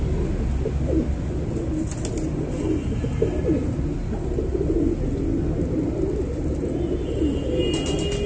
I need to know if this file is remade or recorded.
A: recorded